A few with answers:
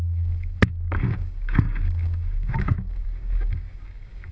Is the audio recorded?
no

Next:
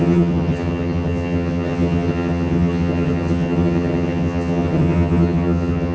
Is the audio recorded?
no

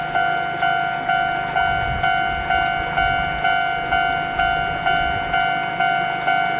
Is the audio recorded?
yes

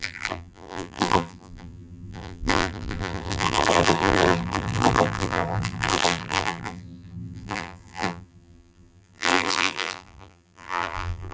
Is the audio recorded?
no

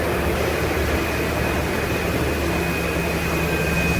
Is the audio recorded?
yes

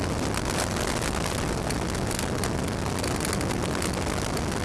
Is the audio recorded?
yes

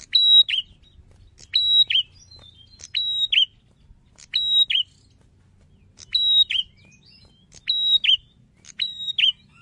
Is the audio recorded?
yes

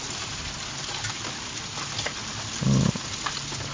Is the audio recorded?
yes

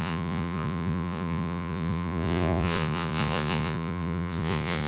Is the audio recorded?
no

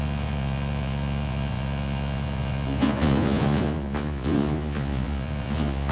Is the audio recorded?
no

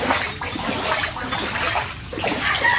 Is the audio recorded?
yes